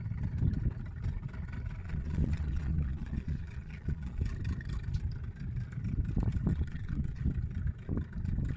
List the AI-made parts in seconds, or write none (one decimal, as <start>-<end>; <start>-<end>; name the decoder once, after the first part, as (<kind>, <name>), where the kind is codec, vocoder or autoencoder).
1.8-4.2 (vocoder, Vocos); 6.5-7.2